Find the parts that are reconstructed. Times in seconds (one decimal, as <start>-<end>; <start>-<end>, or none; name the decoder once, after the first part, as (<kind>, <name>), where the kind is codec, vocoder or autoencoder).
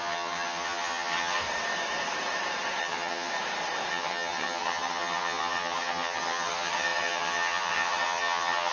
0.0-1.4 (vocoder, HiFi-GAN); 2.8-3.3; 3.9-8.7